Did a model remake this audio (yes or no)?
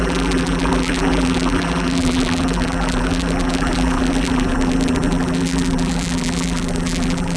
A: yes